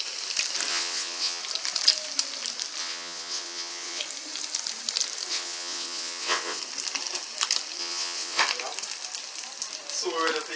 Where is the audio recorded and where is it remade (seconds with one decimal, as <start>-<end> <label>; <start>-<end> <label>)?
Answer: 0.0-0.7 recorded; 0.7-1.4 remade; 1.4-2.8 recorded; 2.8-4.0 remade; 4.0-5.3 recorded; 5.3-6.6 remade; 6.6-7.8 recorded; 7.8-8.4 remade; 8.4-10.6 recorded